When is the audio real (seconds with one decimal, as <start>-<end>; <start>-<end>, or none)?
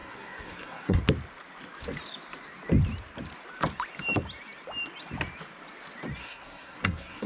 1.0-6.2